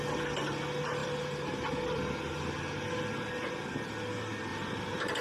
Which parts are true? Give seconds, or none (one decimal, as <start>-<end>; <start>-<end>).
0.0-1.0; 1.5-4.5